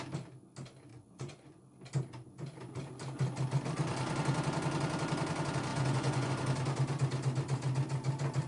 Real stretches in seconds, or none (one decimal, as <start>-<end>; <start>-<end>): 0.0-0.9; 1.6-5.7; 6.3-8.5